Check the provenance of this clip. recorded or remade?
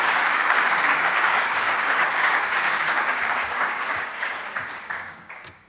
remade